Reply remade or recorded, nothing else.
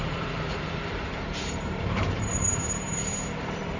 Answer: remade